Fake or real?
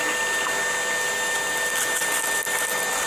real